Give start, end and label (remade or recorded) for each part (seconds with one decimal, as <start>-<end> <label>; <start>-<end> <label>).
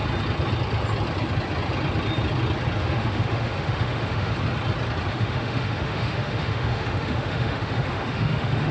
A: 0.0-2.8 recorded; 2.8-4.3 remade; 4.3-5.1 recorded; 5.1-8.7 remade